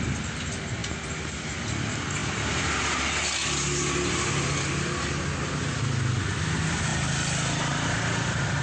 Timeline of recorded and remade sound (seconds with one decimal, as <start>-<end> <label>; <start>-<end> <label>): 0.0-8.6 recorded